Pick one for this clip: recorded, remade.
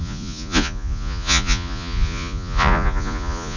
remade